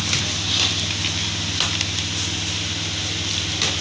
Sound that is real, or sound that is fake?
real